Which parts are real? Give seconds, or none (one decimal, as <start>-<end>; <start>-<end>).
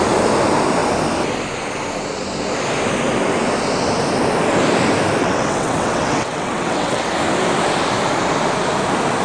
0.0-5.2; 7.1-9.2